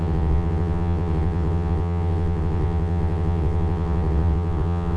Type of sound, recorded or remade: remade